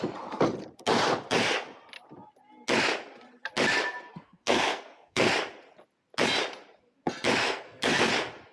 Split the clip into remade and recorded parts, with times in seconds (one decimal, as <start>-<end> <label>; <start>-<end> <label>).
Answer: 0.0-4.1 recorded; 4.1-5.3 remade; 5.3-7.4 recorded; 7.4-8.1 remade; 8.1-8.5 recorded